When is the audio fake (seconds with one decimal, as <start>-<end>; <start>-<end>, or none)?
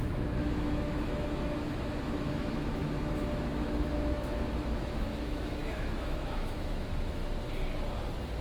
0.0-7.2